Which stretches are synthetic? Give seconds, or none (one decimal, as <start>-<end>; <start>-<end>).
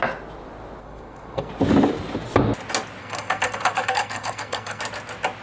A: 0.8-1.5; 3.0-4.8